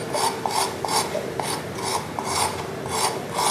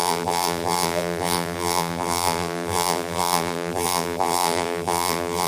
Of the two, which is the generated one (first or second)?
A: second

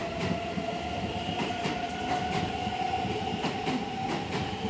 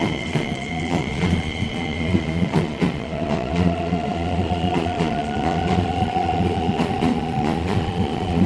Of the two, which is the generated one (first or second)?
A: second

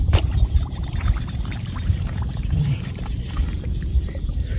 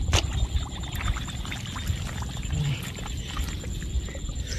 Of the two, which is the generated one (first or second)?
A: first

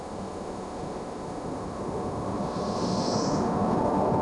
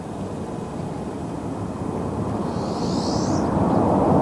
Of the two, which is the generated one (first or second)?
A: first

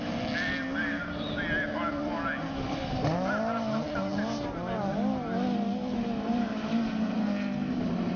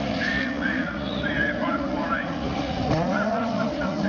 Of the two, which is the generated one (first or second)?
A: second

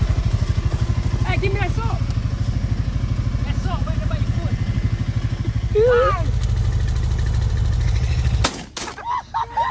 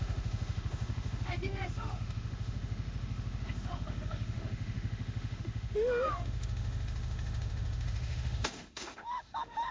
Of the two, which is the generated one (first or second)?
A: second